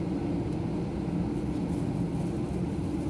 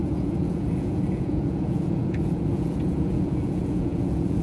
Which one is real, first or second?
first